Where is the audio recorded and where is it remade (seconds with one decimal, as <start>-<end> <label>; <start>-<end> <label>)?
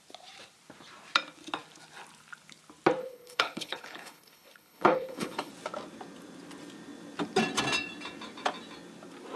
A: 0.0-3.0 recorded; 3.0-5.5 remade; 5.5-9.4 recorded